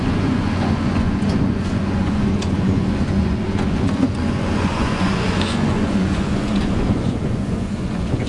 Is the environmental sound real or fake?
fake